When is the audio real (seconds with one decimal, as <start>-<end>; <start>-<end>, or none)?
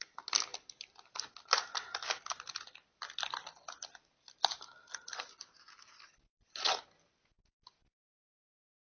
0.0-9.0